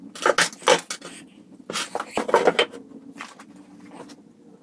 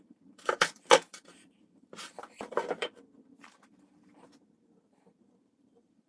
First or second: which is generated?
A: second